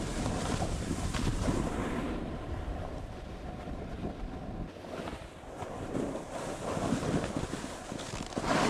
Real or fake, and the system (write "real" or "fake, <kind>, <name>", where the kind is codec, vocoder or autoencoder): real